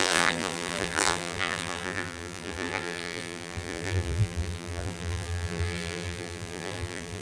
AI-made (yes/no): yes